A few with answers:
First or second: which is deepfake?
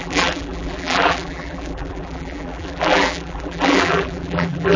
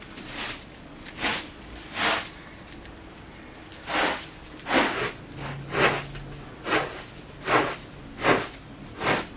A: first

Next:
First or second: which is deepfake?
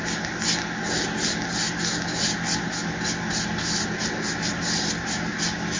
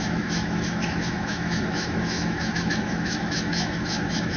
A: second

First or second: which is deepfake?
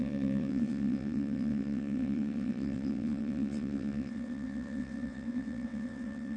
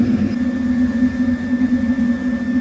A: first